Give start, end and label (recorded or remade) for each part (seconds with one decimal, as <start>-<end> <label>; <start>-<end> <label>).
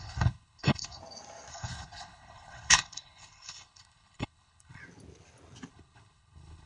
0.0-1.0 remade; 1.0-1.5 recorded; 1.5-4.8 remade; 4.8-5.7 recorded; 5.7-6.7 remade